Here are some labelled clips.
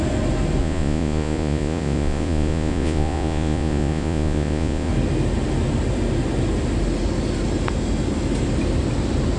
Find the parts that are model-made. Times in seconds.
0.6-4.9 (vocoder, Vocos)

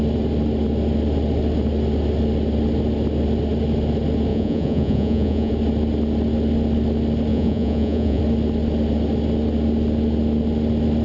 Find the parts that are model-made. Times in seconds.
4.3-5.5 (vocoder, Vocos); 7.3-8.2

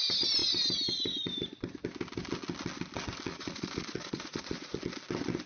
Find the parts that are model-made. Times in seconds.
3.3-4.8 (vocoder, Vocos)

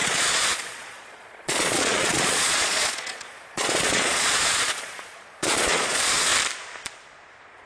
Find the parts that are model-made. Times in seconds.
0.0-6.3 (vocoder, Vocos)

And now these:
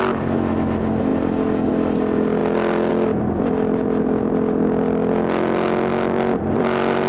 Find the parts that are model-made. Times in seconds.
none

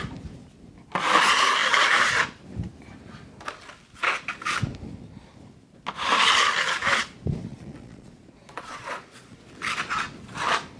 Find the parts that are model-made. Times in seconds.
7.5-9.4 (vocoder, Vocos)

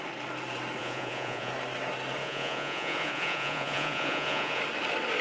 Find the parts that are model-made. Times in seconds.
0.8-1.5 (vocoder, Vocos); 2.2-4.6